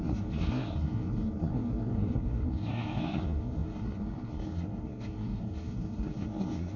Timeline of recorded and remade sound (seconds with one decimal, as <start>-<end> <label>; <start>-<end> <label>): 0.0-6.8 remade